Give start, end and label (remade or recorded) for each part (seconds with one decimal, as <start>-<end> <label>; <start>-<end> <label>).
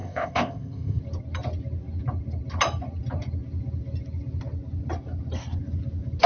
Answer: 0.0-1.0 remade; 1.0-6.3 recorded